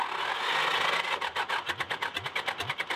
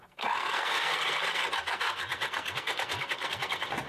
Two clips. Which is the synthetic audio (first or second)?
second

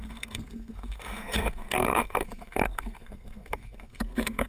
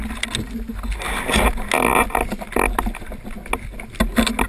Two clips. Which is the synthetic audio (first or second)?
first